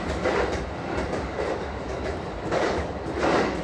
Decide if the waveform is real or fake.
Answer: fake